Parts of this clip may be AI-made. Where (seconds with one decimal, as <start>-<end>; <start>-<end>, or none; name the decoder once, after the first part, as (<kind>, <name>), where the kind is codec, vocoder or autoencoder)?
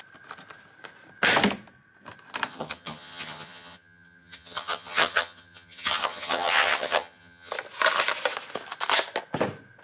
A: 2.5-7.5 (vocoder, HiFi-GAN)